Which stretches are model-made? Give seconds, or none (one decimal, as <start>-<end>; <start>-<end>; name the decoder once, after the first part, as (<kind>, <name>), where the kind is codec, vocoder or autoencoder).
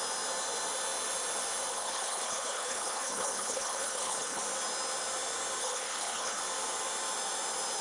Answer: 1.7-4.4 (codec, HILCodec); 5.6-6.4